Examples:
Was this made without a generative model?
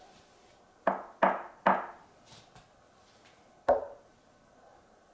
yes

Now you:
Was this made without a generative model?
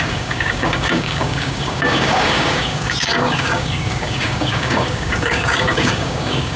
no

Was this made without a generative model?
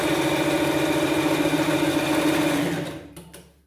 yes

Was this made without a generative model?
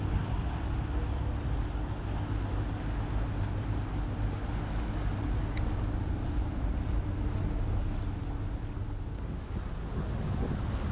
yes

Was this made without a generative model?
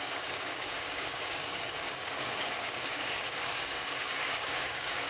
no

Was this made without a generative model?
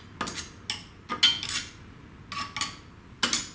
yes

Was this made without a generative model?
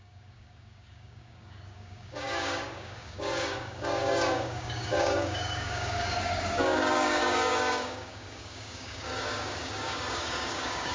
no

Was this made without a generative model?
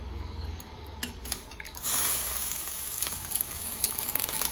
no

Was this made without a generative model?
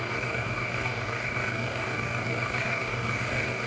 no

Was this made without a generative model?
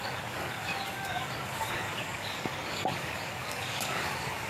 no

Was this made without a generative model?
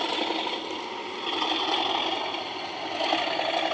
yes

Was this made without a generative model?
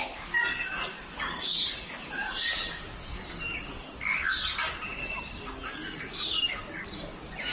no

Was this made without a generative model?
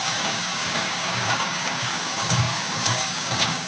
no